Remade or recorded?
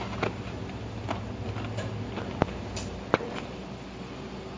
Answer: remade